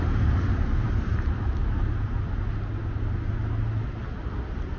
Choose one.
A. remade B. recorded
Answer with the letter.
B